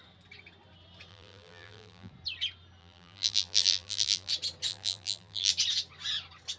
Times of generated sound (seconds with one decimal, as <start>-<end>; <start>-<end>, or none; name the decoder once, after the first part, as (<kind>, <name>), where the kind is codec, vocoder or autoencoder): 1.1-2.1 (vocoder, BigVGAN v2); 2.8-4.3; 4.7-5.5